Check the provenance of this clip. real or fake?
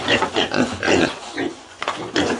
fake